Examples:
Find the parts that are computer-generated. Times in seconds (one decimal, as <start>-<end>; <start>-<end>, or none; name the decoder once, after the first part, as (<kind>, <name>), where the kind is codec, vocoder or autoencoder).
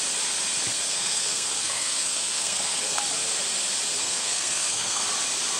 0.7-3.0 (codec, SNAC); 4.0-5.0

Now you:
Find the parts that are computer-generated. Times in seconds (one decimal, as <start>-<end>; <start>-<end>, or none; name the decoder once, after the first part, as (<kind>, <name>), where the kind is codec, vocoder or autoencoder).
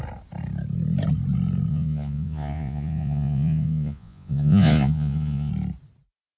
1.7-5.5 (vocoder, Vocos)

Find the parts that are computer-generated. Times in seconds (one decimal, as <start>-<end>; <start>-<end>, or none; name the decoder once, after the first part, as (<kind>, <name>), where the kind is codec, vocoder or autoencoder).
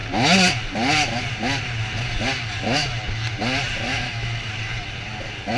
3.9-4.5 (autoencoder, DAC-VAE)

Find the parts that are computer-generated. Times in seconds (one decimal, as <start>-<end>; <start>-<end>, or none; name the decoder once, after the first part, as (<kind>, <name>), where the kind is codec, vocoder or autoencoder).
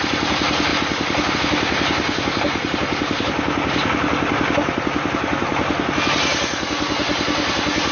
none